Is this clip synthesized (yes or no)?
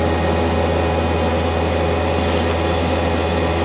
no